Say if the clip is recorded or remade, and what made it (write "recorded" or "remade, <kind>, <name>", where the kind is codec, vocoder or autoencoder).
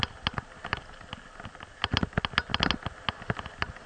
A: recorded